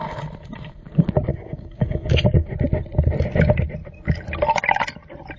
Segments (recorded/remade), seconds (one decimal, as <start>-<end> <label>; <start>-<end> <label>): 0.0-1.3 recorded; 1.3-2.5 remade; 2.5-5.4 recorded